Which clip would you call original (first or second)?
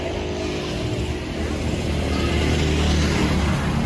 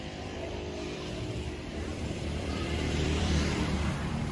first